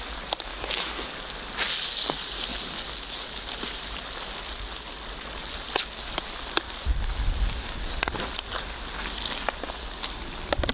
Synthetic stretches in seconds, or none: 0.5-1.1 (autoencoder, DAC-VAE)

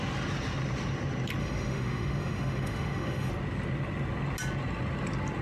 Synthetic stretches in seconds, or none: 1.4-3.3 (autoencoder, DAC-VAE)

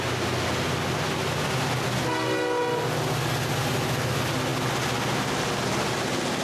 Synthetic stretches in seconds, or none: none

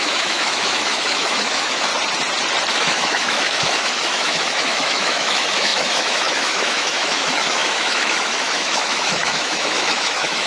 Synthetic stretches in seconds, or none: 0.0-1.9 (autoencoder, DAC-VAE); 2.7-10.5